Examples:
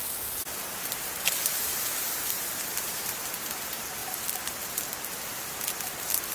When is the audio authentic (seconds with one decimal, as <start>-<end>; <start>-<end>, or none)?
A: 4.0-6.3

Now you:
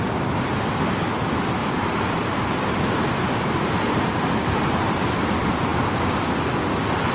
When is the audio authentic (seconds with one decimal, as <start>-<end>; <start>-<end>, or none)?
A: 0.0-1.6; 4.9-7.1

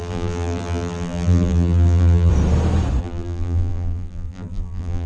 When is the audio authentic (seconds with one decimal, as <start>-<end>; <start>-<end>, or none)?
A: 2.3-3.0

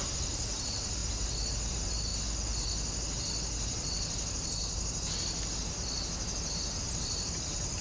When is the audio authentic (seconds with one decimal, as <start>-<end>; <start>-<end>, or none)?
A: 1.0-1.7; 2.1-6.8

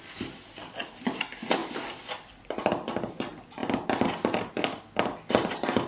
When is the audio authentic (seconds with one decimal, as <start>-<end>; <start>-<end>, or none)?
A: 0.0-1.6; 2.9-5.9

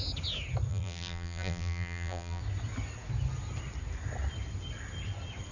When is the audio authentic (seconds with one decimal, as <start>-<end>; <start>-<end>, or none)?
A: 0.0-0.7; 2.4-5.5

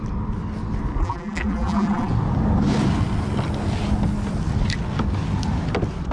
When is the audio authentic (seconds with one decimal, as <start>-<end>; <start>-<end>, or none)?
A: 0.0-1.0; 2.1-6.1